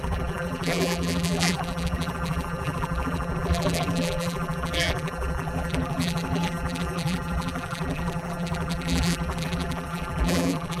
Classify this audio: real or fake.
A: fake